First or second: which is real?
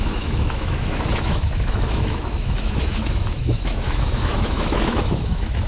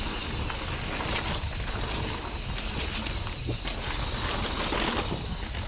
second